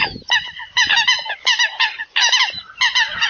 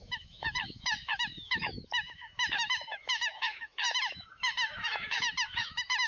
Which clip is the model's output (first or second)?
second